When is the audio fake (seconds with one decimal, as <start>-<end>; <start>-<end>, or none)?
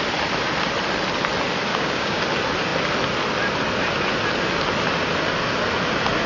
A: 1.7-2.2